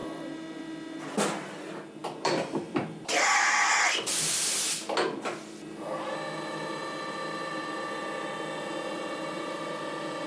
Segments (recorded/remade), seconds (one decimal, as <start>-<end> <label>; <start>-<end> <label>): 0.0-2.0 recorded; 2.0-3.0 remade; 3.0-10.3 recorded